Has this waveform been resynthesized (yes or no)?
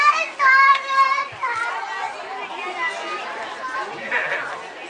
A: no